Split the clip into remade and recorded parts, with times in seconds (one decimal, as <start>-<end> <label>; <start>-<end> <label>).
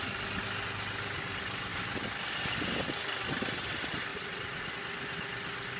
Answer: 0.0-4.1 recorded; 4.1-4.7 remade; 4.7-5.8 recorded